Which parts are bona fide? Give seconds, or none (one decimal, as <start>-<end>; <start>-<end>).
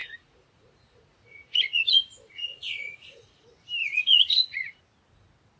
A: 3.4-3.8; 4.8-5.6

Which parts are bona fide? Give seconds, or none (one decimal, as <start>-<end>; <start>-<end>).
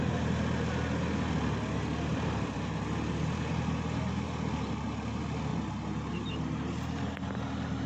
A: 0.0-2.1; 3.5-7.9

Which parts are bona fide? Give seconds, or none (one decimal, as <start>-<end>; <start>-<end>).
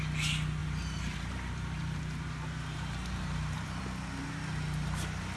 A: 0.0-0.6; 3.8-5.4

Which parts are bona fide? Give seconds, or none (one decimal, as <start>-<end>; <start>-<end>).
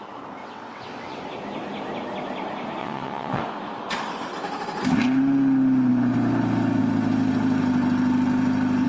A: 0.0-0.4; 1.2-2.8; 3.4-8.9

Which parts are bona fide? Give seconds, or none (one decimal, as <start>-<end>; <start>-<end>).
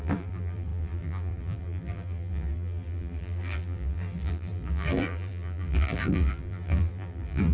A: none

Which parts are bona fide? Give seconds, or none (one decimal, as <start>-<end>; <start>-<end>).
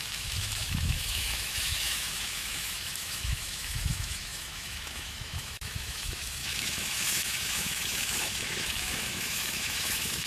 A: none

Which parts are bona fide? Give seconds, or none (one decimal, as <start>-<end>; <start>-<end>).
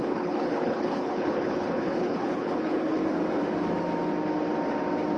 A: 3.0-5.2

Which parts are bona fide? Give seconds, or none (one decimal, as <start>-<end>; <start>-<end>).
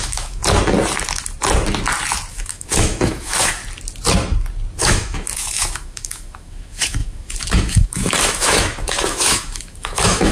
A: 0.4-2.3; 3.6-4.8